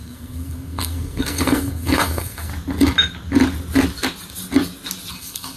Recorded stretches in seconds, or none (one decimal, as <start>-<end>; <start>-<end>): 2.5-5.1